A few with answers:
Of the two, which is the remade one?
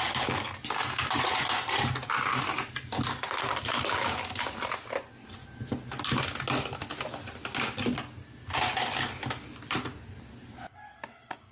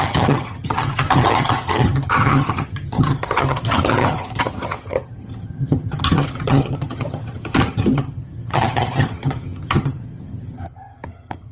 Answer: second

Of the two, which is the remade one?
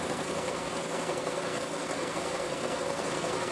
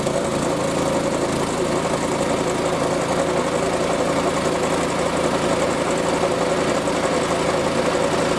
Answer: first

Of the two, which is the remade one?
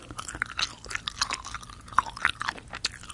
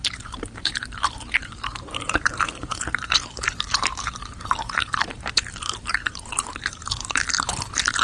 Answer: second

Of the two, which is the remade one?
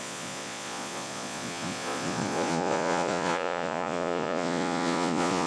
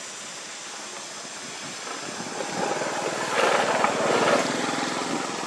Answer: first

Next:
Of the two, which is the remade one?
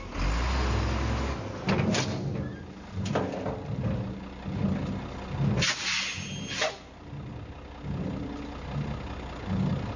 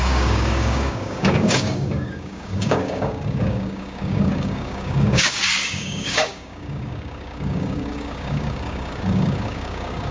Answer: second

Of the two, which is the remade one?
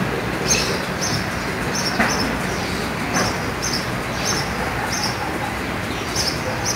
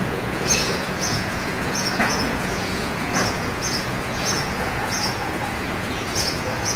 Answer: second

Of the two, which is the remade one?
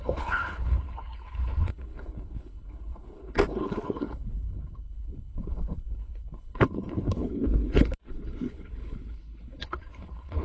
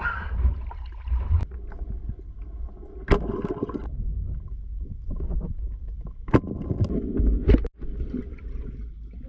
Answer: first